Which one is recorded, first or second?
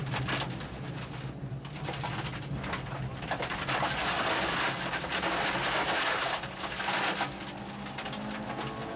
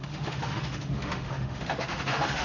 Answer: first